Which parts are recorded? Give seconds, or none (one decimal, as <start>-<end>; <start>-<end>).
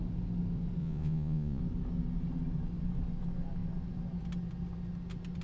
0.0-0.8; 1.6-5.4